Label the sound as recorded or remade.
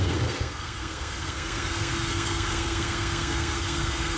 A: remade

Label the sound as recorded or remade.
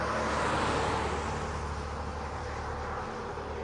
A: recorded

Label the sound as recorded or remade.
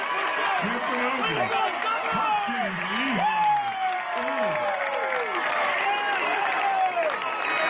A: recorded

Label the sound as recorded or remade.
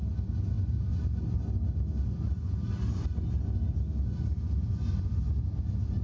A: recorded